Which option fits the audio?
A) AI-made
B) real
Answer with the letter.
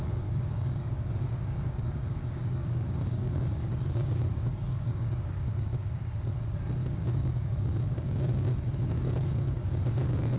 A